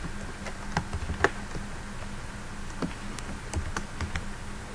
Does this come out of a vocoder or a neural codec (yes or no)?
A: no